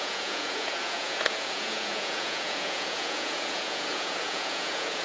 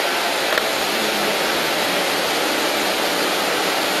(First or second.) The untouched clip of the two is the second